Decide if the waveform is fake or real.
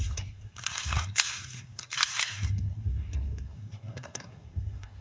fake